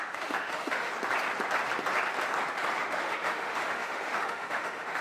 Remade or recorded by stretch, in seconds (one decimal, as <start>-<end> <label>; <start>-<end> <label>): 0.0-0.9 remade; 0.9-2.8 recorded; 2.8-5.0 remade